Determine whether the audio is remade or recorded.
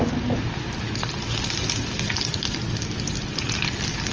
recorded